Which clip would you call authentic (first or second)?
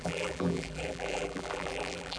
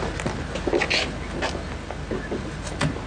second